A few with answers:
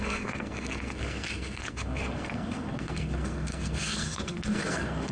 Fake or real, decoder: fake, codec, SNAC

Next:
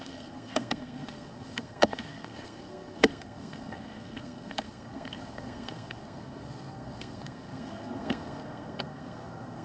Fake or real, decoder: fake, codec, SNAC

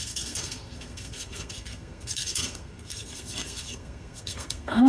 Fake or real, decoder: fake, codec, SNAC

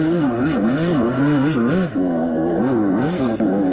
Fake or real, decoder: fake, codec, SNAC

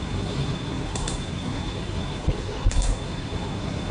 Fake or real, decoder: fake, codec, SNAC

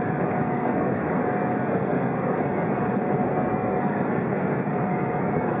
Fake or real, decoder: fake, codec, SNAC